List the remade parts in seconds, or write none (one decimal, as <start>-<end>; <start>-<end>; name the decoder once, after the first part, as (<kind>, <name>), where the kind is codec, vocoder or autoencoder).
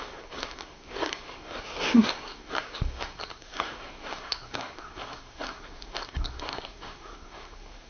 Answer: 0.0-7.9 (codec, SNAC)